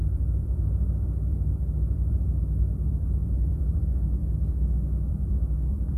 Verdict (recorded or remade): remade